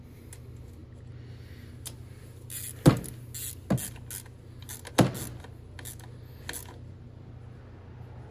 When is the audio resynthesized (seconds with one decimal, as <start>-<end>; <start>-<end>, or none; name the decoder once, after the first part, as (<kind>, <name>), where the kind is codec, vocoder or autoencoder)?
none